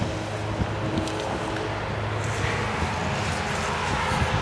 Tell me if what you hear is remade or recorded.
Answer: recorded